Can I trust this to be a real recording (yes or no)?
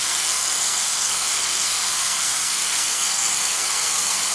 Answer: no